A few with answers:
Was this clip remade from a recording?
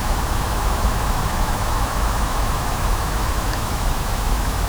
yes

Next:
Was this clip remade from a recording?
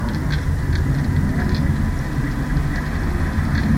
no